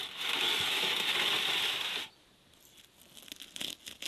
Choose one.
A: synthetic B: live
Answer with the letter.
B